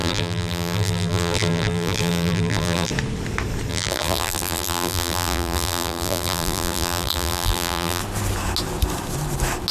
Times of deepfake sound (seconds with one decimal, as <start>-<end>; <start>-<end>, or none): 0.0-2.9; 3.7-8.0